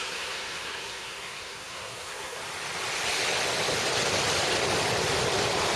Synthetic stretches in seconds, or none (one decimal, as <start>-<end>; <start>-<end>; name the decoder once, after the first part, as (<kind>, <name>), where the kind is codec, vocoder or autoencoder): 0.0-2.4 (codec, SNAC)